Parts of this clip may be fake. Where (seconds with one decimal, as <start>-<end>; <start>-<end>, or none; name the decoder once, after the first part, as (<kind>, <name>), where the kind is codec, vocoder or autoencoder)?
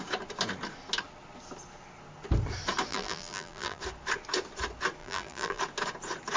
2.9-3.8 (vocoder, BigVGAN v2); 5.0-5.6